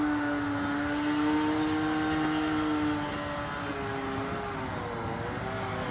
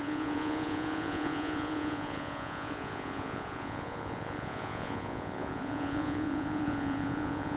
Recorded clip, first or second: first